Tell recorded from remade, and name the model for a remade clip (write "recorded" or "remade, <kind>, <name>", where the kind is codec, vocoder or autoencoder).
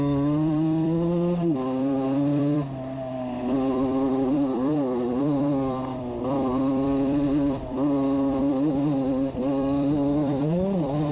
remade, vocoder, BigVGAN v2